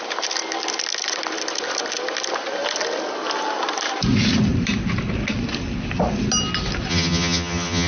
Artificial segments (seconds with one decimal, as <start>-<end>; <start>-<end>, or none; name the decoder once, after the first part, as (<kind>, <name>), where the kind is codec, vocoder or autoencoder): 6.9-7.9 (vocoder, HiFi-GAN)